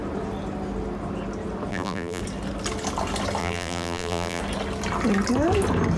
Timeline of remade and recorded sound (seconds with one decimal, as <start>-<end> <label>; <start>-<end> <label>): 0.0-1.7 recorded; 1.7-2.2 remade; 2.2-3.4 recorded; 3.4-4.4 remade; 4.4-6.0 recorded